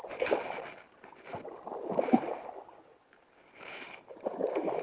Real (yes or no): yes